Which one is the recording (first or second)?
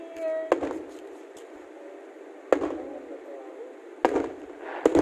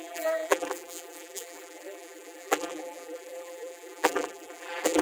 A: first